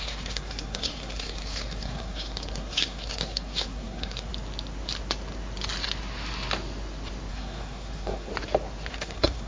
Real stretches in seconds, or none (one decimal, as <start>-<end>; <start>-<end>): 4.3-7.3; 8.3-8.9